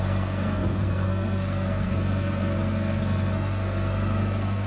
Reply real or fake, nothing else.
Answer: fake